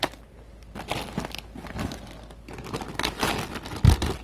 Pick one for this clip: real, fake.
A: real